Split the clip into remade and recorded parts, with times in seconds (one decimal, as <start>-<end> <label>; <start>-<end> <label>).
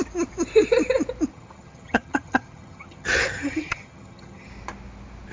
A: 0.0-1.3 recorded; 1.3-4.5 remade; 4.5-5.3 recorded